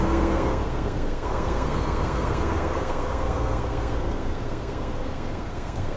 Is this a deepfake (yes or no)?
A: yes